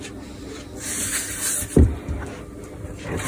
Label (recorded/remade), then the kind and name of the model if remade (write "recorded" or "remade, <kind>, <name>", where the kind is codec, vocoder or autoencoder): recorded